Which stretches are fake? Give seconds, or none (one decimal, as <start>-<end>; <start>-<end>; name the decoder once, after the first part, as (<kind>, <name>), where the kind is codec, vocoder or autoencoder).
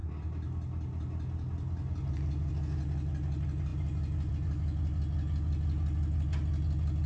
none